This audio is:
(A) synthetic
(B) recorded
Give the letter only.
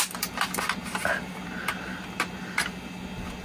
B